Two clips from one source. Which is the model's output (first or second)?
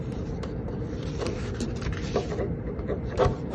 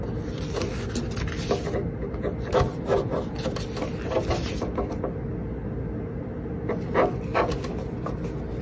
first